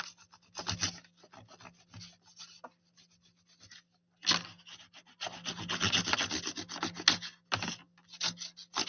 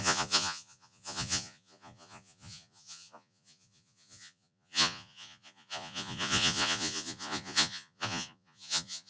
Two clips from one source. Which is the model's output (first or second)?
second